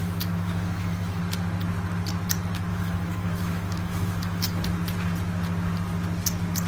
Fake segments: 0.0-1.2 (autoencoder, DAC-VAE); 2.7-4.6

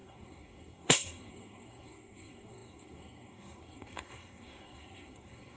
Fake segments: 0.0-5.6 (codec, SNAC)

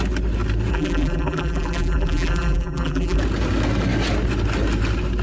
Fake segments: 0.7-3.2 (vocoder, BigVGAN v2)

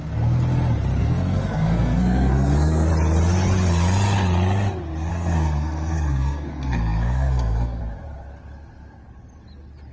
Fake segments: 1.0-2.9 (codec, SNAC); 5.1-7.8

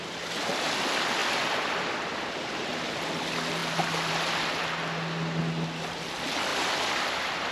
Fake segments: 1.2-2.9 (vocoder, BigVGAN v2); 6.5-7.5

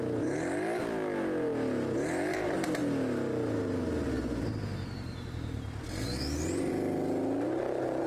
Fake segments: none

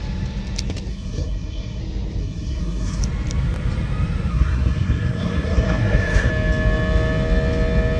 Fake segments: 0.9-1.8 (codec, SNAC); 2.2-3.0; 4.3-6.3